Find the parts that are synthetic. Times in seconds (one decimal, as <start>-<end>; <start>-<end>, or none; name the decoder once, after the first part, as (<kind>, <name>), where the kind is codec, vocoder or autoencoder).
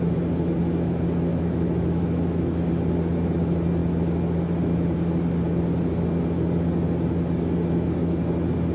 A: 1.3-2.7 (autoencoder, DAC-VAE)